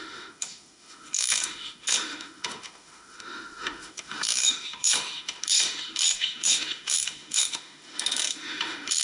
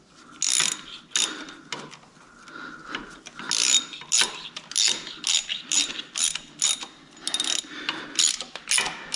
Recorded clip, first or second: second